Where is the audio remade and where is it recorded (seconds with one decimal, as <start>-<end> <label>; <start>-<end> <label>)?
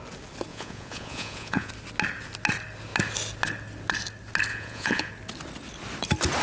0.0-0.5 recorded; 0.5-1.7 remade; 1.7-4.5 recorded; 4.5-5.1 remade; 5.1-6.4 recorded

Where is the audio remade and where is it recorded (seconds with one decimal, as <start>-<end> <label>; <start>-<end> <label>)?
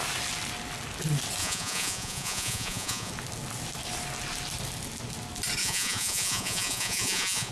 0.0-1.4 recorded; 1.4-3.1 remade; 3.1-5.6 recorded; 5.6-7.5 remade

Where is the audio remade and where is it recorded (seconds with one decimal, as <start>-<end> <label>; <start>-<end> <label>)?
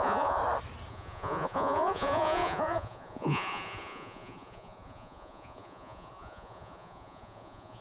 0.0-0.4 remade; 0.4-0.9 recorded; 0.9-7.8 remade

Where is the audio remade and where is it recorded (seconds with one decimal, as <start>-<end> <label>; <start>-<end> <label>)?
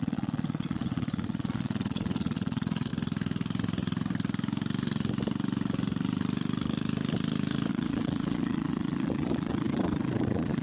0.0-2.9 remade; 2.9-7.7 recorded; 7.7-10.6 remade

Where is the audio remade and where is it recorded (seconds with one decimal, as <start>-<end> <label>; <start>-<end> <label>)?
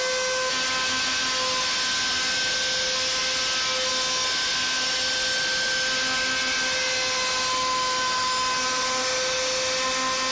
0.0-10.3 recorded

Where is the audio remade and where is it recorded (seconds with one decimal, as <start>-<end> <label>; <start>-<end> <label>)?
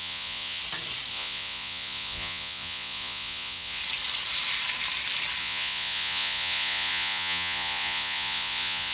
0.0-0.6 remade; 0.6-1.1 recorded; 1.1-3.8 remade; 3.8-5.4 recorded; 5.4-8.9 remade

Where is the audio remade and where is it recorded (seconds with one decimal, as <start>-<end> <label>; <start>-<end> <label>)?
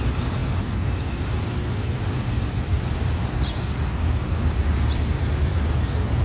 0.0-6.2 recorded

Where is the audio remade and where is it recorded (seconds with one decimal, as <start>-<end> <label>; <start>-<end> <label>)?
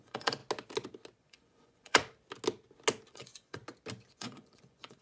0.0-0.4 remade; 0.4-1.2 recorded; 1.2-2.0 remade; 2.0-3.1 recorded; 3.1-3.6 remade; 3.6-4.1 recorded; 4.1-5.0 remade